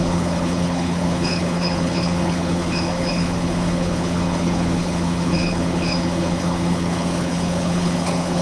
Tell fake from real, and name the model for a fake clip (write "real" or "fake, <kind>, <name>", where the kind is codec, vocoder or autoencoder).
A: fake, codec, HILCodec